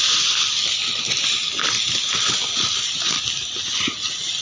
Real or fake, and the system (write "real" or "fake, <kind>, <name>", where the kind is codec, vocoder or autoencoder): real